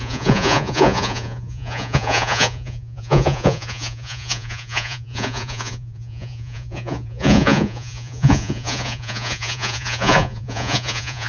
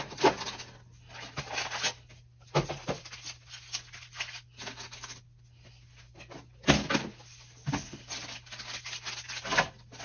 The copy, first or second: first